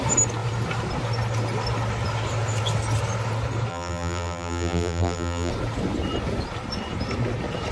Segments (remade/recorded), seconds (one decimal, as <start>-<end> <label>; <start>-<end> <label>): 0.0-3.7 recorded; 3.7-5.5 remade; 5.5-7.7 recorded